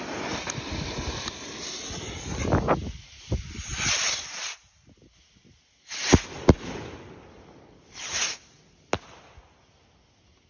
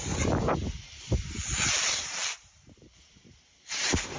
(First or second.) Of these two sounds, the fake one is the second